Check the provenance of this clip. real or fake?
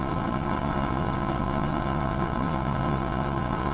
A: fake